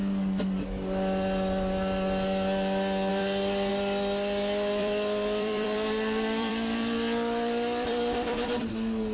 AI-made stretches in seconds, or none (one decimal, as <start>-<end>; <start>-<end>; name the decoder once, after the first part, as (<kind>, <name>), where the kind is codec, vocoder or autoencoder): 3.1-3.7 (vocoder, BigVGAN v2); 4.8-8.7